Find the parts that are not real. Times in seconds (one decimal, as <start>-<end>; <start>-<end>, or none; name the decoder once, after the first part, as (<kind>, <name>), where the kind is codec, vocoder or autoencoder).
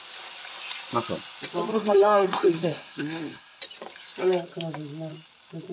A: 1.7-3.6 (codec, SNAC)